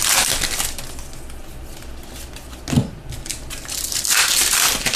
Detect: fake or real real